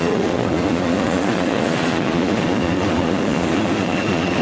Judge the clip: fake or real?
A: fake